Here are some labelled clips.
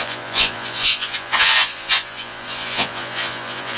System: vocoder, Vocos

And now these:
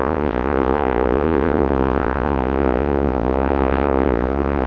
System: vocoder, Vocos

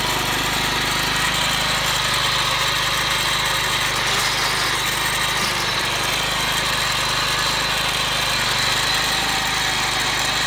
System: none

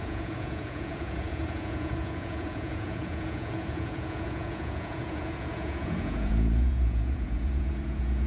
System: vocoder, Vocos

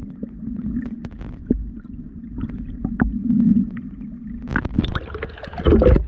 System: none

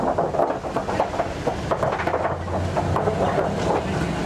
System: none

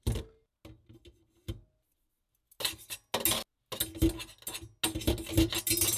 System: none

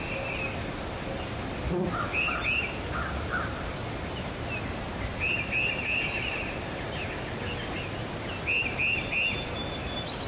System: none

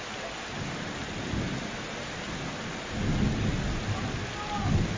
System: none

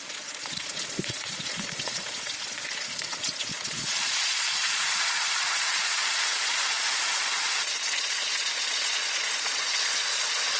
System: vocoder, Vocos